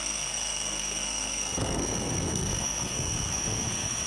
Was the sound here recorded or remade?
remade